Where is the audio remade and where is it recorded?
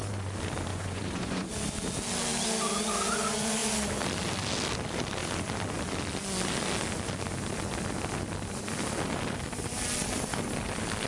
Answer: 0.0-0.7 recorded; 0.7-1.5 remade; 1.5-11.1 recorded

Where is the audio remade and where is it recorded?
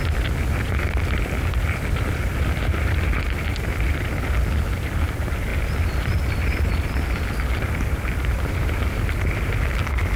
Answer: 0.0-10.2 recorded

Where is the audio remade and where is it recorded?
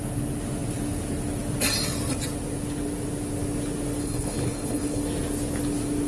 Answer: 0.0-4.0 recorded; 4.0-5.0 remade; 5.0-6.1 recorded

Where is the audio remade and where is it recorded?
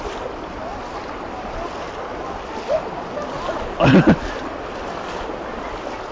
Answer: 0.0-6.1 recorded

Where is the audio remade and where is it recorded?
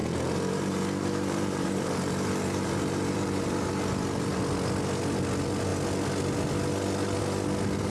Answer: 0.0-4.4 remade; 4.4-7.9 recorded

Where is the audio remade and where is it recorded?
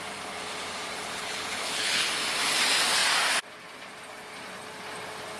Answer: 0.0-0.9 recorded; 0.9-2.1 remade; 2.1-5.4 recorded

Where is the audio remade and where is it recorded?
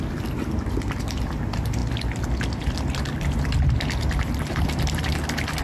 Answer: 0.0-5.6 recorded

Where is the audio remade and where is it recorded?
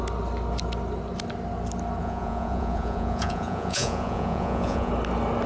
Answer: 0.0-2.0 recorded; 2.0-4.9 remade; 4.9-5.5 recorded